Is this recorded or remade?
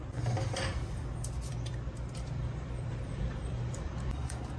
remade